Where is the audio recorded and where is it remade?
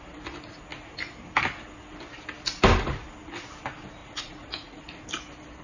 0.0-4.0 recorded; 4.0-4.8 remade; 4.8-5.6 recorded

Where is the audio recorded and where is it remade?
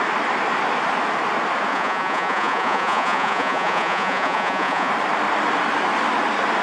0.0-1.7 recorded; 1.7-4.9 remade; 4.9-6.6 recorded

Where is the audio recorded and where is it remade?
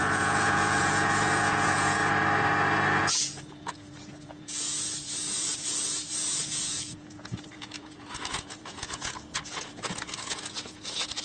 0.0-2.0 remade; 2.0-3.0 recorded; 3.0-11.2 remade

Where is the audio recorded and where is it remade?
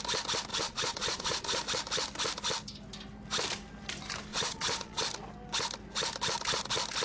0.0-0.5 recorded; 0.5-1.6 remade; 1.6-4.3 recorded; 4.3-5.0 remade; 5.0-7.0 recorded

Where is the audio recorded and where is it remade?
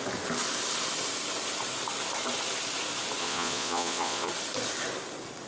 0.0-3.2 recorded; 3.2-4.3 remade; 4.3-5.5 recorded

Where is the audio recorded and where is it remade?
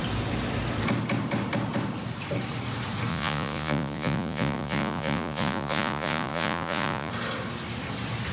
0.0-3.1 recorded; 3.1-7.1 remade; 7.1-8.3 recorded